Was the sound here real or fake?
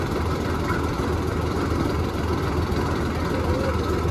real